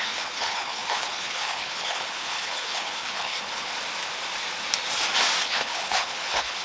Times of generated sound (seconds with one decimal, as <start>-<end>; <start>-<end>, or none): 0.0-3.7; 5.4-6.6